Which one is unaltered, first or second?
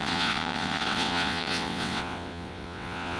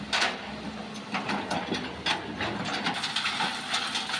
second